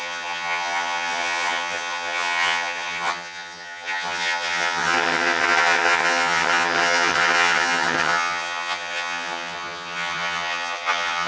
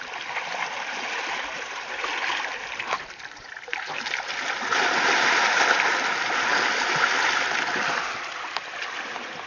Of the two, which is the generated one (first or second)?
first